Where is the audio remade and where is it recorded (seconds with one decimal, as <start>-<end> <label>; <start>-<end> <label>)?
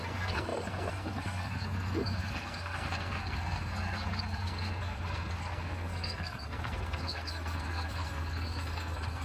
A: 0.0-9.2 remade